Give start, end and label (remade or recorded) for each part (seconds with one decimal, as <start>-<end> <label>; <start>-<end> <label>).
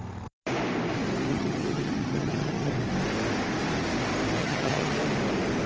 0.0-1.3 recorded; 1.3-2.7 remade; 2.7-4.4 recorded; 4.4-4.9 remade; 4.9-5.7 recorded